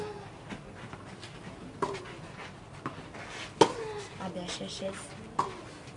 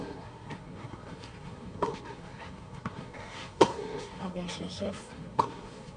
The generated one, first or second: second